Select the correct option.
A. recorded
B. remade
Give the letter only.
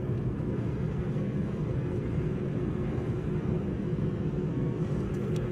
B